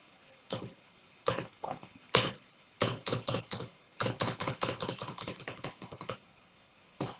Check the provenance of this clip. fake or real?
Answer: fake